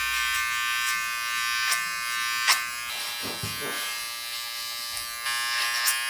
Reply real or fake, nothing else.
real